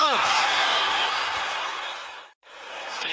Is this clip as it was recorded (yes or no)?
no